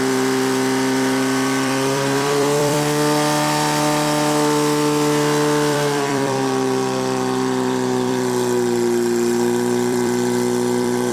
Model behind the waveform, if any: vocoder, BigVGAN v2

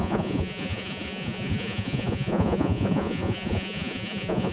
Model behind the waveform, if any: vocoder, Vocos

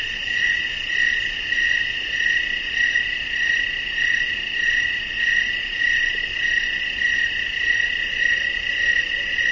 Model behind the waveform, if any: none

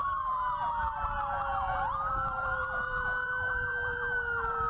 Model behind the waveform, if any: vocoder, BigVGAN v2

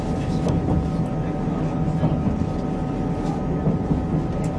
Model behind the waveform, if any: none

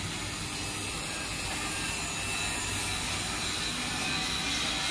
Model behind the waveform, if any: none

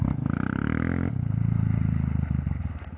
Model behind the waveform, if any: none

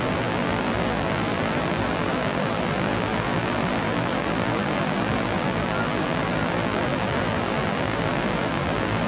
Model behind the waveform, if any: vocoder, BigVGAN v2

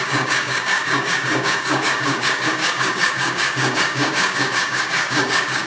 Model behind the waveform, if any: codec, DAC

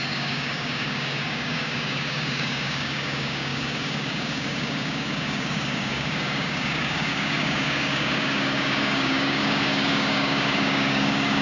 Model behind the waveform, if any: codec, DAC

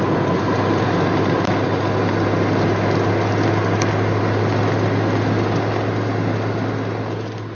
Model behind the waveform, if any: none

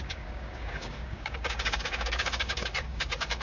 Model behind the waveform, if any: codec, DAC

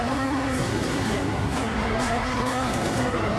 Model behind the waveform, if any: codec, SNAC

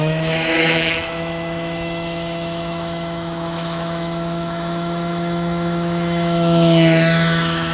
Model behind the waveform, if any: autoencoder, DAC-VAE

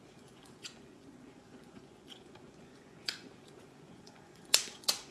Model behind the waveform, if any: vocoder, Vocos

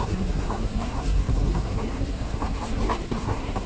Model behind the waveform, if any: codec, SNAC